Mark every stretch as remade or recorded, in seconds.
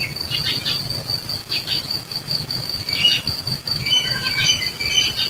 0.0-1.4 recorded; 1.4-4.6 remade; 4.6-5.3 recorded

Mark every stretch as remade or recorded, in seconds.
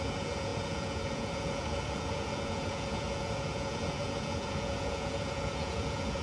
0.0-6.2 remade